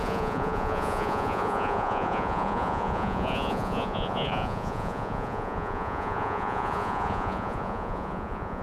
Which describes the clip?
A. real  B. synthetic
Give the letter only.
B